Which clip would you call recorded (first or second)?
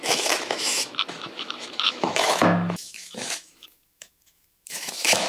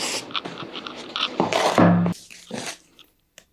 second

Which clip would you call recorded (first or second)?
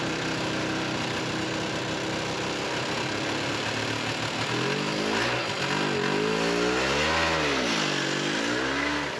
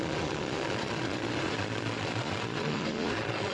first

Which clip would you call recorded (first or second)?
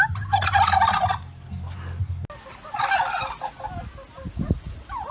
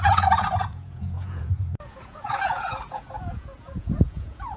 first